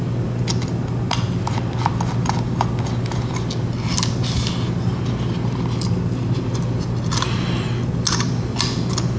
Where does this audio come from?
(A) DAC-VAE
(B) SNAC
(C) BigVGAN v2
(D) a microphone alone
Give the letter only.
D